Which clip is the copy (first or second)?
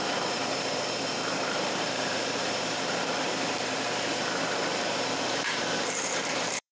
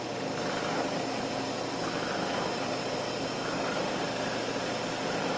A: first